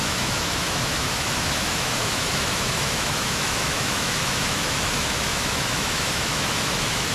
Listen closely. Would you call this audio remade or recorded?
remade